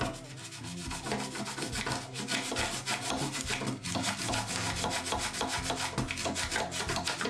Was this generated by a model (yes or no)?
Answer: no